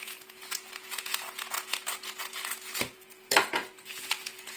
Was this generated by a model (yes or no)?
yes